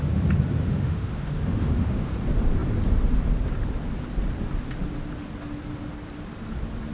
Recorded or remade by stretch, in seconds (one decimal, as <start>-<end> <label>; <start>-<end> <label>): 0.0-0.6 recorded; 0.6-2.1 remade; 2.1-6.9 recorded